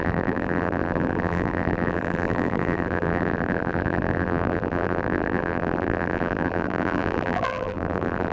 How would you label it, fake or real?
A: fake